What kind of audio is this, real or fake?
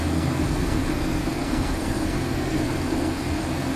fake